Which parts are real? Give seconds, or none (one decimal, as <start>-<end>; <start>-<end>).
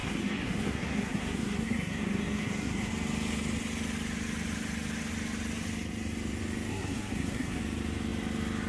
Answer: 2.9-6.7; 7.6-8.7